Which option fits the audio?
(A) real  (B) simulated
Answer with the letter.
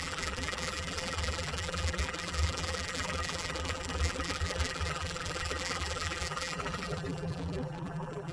B